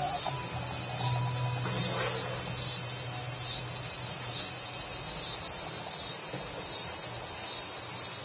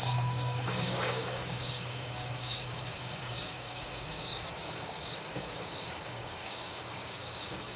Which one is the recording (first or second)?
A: first